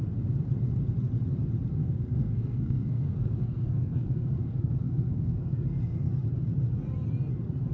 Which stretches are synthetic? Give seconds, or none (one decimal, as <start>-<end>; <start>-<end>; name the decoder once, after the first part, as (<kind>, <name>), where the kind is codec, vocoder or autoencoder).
1.8-6.1 (codec, SNAC)